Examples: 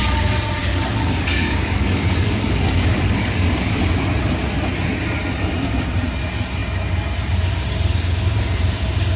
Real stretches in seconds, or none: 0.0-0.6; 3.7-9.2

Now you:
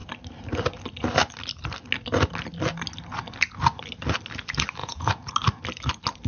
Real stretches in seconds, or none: 0.0-4.8; 5.3-6.3